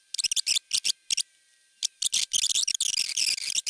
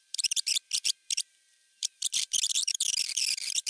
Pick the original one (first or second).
first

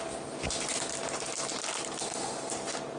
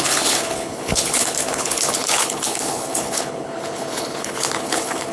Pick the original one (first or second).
first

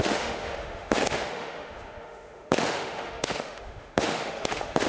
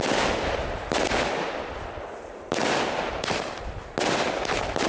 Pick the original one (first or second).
second